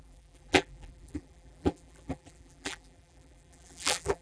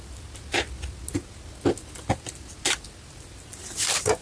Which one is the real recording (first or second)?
second